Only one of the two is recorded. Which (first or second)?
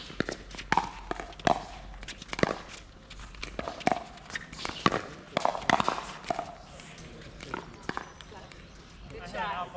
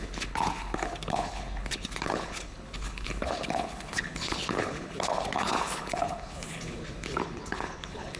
first